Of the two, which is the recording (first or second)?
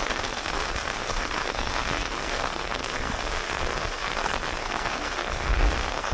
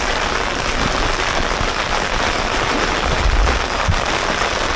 second